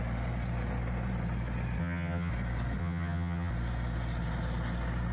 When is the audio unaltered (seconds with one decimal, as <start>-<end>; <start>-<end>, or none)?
0.0-1.8; 2.3-2.8; 3.5-5.1